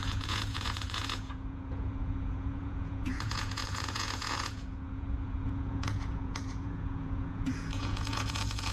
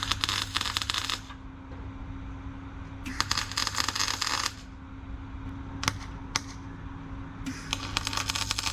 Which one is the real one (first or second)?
second